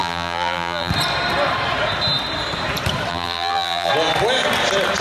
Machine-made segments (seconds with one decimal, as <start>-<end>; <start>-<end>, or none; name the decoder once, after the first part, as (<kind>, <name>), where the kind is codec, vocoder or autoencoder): 0.0-0.9 (vocoder, BigVGAN v2); 3.1-3.9